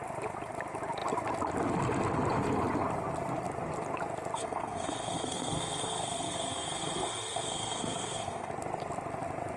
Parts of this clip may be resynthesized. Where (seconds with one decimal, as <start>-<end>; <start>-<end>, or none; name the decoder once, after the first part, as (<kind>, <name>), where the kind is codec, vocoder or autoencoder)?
4.4-8.5 (codec, SNAC)